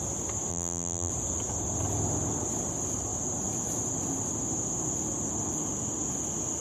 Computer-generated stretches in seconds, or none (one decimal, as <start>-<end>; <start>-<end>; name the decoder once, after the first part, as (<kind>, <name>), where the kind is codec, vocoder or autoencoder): 0.5-1.1 (vocoder, BigVGAN v2)